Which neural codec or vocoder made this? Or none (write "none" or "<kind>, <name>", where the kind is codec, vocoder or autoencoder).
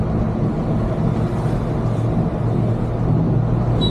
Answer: none